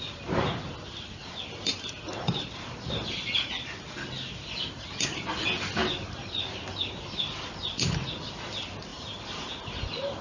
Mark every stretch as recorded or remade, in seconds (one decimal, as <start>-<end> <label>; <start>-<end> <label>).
0.0-8.9 recorded; 8.9-9.7 remade; 9.7-10.2 recorded